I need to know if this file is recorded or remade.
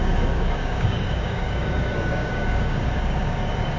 remade